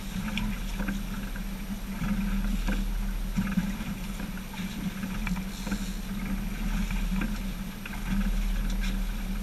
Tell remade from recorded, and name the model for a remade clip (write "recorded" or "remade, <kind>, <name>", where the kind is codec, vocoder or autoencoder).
recorded